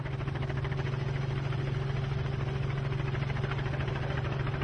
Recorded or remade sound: recorded